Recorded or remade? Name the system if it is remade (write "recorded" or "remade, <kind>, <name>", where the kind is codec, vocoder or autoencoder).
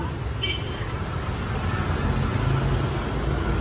recorded